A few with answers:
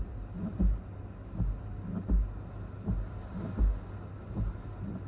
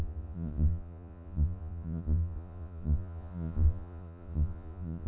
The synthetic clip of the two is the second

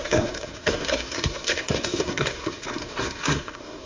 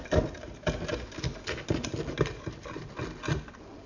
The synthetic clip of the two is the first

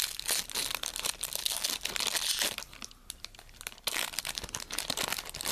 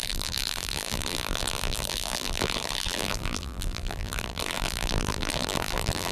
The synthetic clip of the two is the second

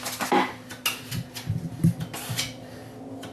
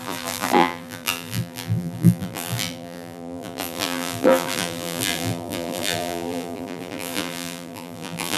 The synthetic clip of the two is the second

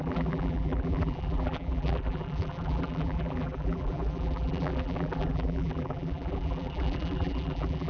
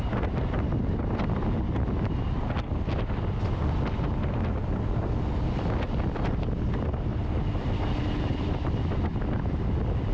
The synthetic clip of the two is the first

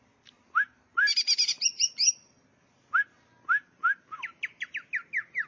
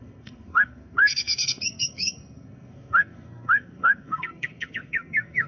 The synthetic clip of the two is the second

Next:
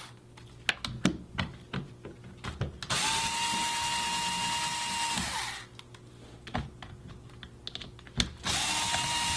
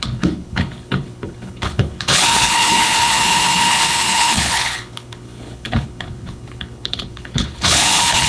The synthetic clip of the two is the second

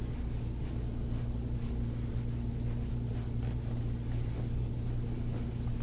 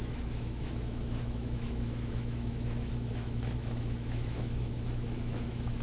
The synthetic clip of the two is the second